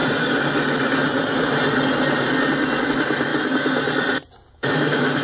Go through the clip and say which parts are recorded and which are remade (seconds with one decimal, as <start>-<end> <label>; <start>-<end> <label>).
0.0-2.9 recorded; 2.9-3.3 remade; 3.3-4.5 recorded; 4.5-5.2 remade